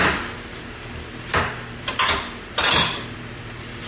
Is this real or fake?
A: real